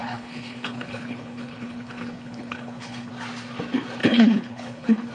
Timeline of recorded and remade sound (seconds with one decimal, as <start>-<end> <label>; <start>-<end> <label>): 0.0-3.1 remade; 3.1-4.0 recorded; 4.0-5.1 remade